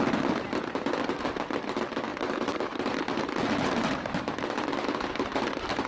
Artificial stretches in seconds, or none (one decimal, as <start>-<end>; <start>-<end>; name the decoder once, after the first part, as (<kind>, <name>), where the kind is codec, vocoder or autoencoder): 2.1-4.2 (vocoder, BigVGAN v2)

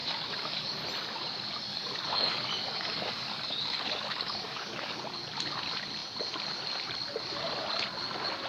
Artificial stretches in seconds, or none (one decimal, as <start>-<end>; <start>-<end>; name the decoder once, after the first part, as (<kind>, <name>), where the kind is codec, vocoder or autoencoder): 0.0-0.8 (codec, DAC); 1.7-5.0

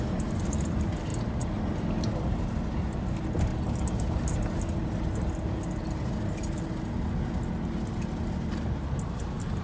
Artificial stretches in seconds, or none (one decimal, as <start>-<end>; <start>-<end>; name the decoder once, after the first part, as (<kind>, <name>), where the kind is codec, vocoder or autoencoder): none

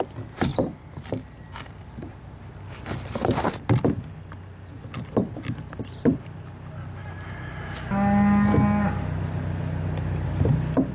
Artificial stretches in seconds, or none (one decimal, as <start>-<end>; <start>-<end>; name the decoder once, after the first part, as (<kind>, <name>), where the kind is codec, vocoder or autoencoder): 0.5-2.6 (vocoder, BigVGAN v2)

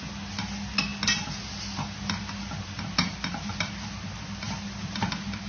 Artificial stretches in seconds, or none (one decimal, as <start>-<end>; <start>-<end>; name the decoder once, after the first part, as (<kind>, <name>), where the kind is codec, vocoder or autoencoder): none

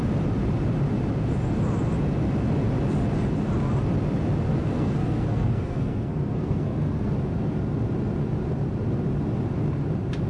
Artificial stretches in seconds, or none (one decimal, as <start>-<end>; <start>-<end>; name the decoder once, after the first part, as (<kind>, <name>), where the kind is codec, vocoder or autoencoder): 4.6-7.1 (codec, SNAC)